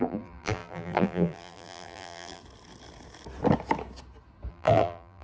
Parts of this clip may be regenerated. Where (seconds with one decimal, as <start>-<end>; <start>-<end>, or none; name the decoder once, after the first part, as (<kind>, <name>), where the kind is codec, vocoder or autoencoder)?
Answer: 0.0-2.4 (vocoder, BigVGAN v2); 4.5-5.2